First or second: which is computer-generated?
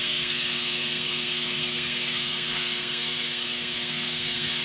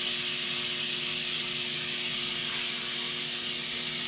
first